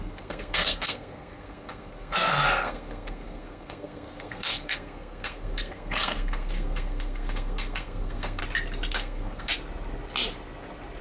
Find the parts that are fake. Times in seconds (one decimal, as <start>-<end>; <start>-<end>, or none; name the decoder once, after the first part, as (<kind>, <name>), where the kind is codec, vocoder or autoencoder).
0.0-8.4 (codec, SNAC); 8.9-9.5